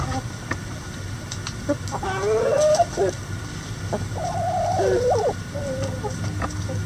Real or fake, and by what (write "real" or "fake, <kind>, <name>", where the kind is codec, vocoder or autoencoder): real